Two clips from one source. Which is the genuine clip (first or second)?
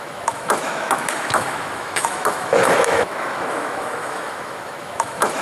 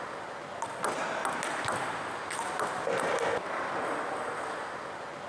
second